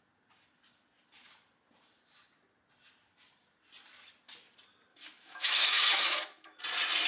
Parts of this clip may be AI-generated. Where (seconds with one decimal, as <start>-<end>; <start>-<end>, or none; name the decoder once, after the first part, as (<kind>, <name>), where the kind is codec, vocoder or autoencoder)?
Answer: 4.9-6.6 (autoencoder, DAC-VAE)